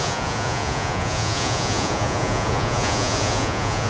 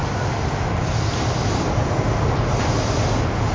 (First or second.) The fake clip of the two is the first